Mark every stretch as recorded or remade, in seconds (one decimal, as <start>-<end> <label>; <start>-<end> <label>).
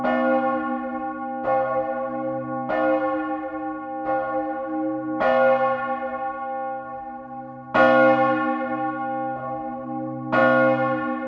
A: 0.0-11.3 recorded